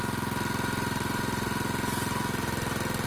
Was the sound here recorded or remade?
recorded